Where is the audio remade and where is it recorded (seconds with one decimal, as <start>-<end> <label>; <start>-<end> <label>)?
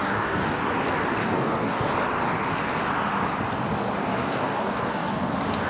0.0-0.6 remade; 0.6-1.2 recorded; 1.2-1.8 remade; 1.8-4.2 recorded; 4.2-5.2 remade; 5.2-5.7 recorded